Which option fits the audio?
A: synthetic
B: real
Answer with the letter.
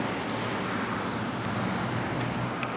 B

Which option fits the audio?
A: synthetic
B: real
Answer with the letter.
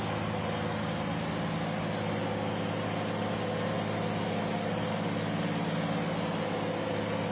B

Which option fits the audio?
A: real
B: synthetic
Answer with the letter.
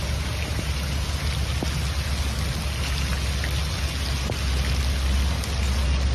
A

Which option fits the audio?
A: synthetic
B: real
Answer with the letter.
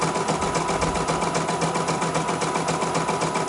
B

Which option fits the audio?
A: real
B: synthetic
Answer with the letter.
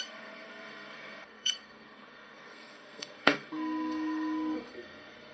B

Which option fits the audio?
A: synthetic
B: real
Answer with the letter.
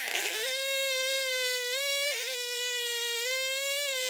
A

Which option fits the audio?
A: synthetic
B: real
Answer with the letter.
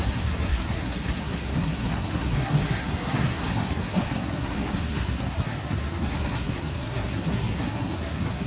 A